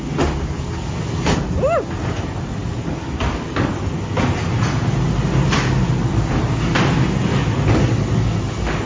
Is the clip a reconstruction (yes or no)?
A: no